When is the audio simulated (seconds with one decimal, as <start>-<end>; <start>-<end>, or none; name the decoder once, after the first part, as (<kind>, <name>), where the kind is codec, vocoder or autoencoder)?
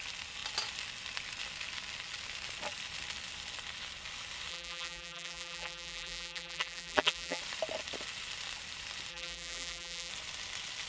4.5-7.4 (vocoder, BigVGAN v2); 9.1-10.1